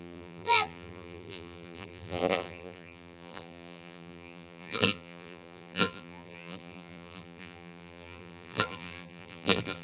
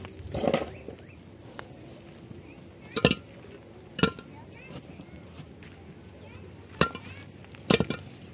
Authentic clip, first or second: second